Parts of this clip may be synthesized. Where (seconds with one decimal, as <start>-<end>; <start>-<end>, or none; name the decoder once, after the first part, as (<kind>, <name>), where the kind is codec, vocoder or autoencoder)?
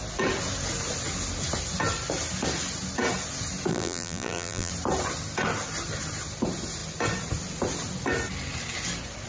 3.7-4.7 (vocoder, BigVGAN v2)